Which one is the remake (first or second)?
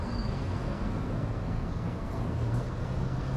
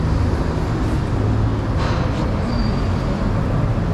first